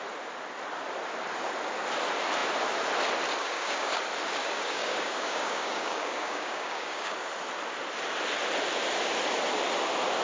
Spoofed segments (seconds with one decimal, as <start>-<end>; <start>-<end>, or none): 3.4-4.0; 4.4-7.3